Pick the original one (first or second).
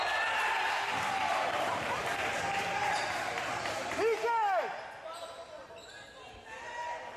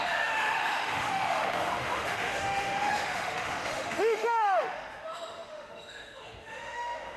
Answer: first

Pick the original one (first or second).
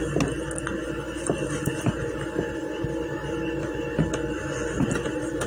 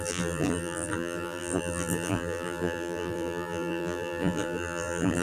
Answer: first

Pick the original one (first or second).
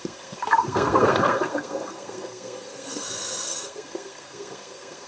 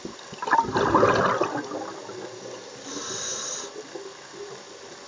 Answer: second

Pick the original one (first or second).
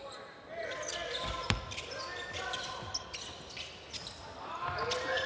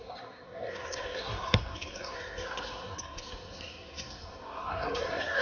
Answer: first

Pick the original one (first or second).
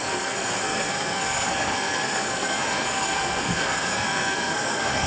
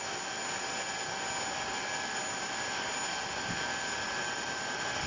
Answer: second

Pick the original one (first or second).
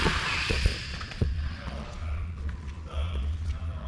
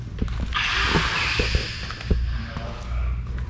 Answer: second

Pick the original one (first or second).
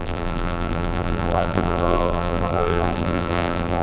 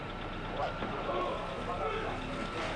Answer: second